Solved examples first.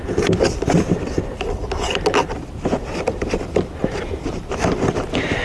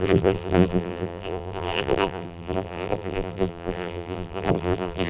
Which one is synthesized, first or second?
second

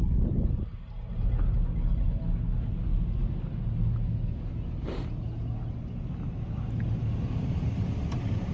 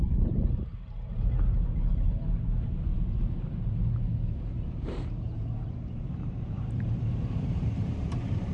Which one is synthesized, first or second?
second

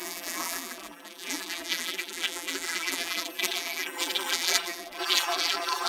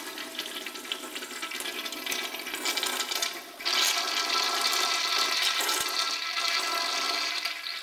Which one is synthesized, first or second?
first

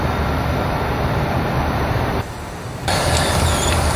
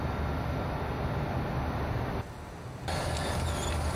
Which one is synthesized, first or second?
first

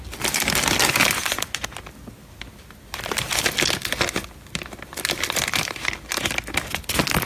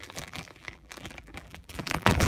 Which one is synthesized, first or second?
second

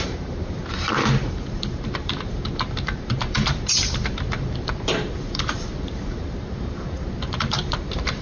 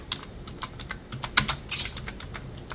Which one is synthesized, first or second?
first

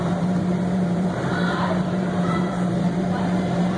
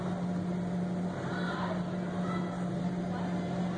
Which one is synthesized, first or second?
first